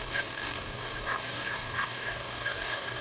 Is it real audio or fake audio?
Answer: fake